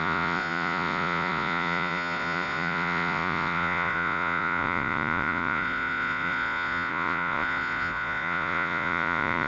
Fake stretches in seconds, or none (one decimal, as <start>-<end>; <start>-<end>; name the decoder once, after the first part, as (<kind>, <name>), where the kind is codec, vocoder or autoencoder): 0.0-9.5 (vocoder, Vocos)